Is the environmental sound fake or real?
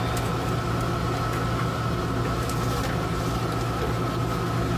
real